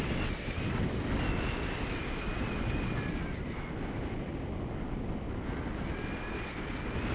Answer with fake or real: real